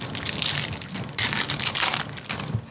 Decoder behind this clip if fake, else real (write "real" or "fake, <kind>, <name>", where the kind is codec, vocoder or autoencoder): real